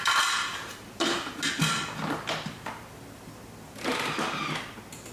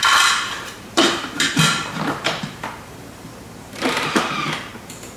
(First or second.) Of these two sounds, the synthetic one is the second